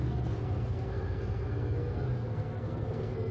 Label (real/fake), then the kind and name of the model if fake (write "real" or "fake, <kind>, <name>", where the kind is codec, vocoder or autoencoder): fake, codec, SNAC